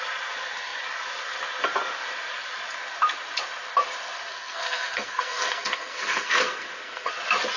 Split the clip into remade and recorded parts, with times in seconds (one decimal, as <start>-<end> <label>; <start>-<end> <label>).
0.0-4.3 recorded; 4.3-7.1 remade; 7.1-7.6 recorded